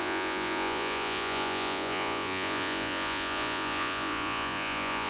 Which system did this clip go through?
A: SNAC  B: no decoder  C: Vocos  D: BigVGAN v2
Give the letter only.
C